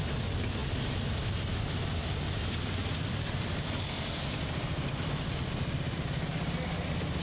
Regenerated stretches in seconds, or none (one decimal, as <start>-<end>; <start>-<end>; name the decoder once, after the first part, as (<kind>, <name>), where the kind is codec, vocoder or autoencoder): none